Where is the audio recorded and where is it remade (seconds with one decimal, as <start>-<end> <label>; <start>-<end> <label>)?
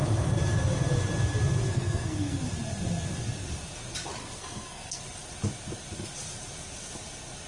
0.0-1.7 recorded; 1.7-2.4 remade; 2.4-4.2 recorded; 4.2-5.0 remade; 5.0-7.5 recorded